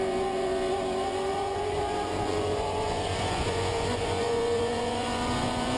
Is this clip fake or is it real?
fake